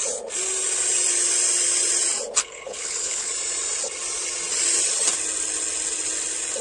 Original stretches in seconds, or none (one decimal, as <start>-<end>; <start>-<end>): 0.0-2.4; 3.3-6.6

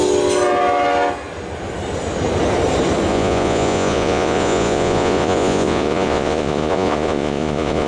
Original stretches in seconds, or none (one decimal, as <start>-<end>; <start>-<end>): 0.0-3.1

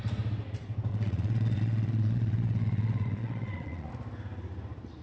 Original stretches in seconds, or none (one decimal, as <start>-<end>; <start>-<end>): 0.0-0.9; 3.9-5.0

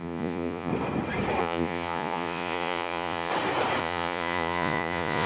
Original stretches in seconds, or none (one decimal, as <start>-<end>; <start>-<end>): 0.7-1.4; 3.3-3.8

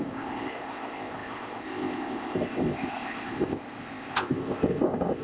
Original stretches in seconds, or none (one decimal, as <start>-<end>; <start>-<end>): none

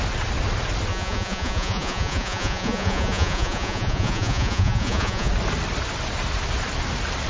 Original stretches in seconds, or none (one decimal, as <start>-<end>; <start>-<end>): 0.0-0.9; 5.3-7.3